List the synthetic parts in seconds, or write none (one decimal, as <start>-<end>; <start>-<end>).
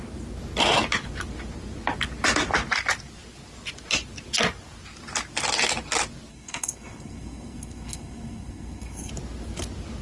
6.3-9.1